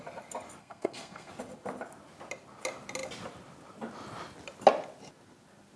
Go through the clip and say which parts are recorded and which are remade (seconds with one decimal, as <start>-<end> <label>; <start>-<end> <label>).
0.0-0.6 recorded; 0.6-1.3 remade; 1.3-5.8 recorded

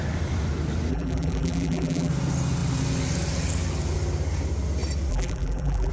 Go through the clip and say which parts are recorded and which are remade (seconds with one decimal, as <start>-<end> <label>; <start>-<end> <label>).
0.0-0.9 recorded; 0.9-2.1 remade; 2.1-5.1 recorded; 5.1-5.9 remade

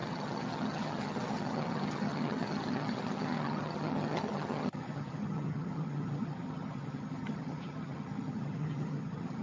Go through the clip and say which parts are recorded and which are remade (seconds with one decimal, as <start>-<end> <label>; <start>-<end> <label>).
0.0-9.4 remade